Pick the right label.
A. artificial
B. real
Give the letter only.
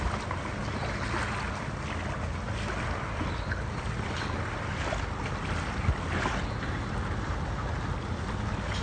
B